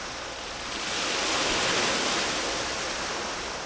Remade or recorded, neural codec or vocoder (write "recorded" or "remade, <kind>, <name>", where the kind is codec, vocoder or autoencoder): recorded